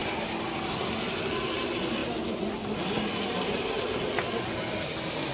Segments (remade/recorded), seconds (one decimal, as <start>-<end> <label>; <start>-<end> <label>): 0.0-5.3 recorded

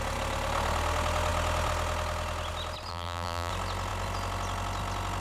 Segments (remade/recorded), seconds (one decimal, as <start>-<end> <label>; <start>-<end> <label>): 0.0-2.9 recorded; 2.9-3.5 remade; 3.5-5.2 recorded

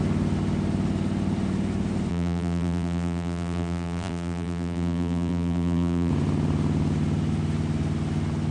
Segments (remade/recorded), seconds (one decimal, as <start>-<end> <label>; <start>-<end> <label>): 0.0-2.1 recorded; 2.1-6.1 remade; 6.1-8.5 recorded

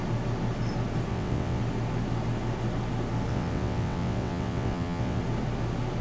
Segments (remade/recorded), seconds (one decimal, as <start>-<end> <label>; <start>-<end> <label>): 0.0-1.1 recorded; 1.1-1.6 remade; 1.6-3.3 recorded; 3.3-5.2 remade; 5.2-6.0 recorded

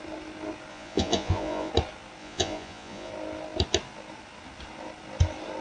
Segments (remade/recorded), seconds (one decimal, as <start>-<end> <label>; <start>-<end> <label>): 0.0-0.7 recorded; 0.7-1.7 remade; 1.7-2.2 recorded; 2.2-3.1 remade; 3.1-5.6 recorded